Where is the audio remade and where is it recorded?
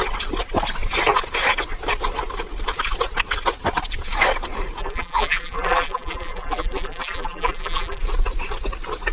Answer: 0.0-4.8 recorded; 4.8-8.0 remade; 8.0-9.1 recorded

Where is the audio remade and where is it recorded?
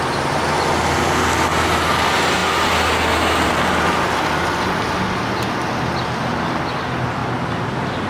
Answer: 0.0-1.5 remade; 1.5-2.0 recorded; 2.0-2.4 remade; 2.4-3.5 recorded; 3.5-7.2 remade; 7.2-8.1 recorded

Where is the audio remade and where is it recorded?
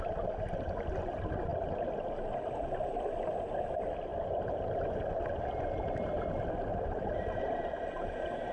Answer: 0.0-6.7 recorded; 6.7-8.5 remade